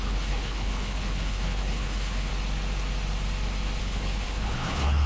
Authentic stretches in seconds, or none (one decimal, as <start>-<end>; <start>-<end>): 2.3-3.8